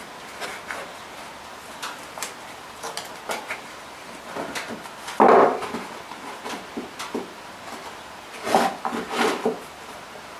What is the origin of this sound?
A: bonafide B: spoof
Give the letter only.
A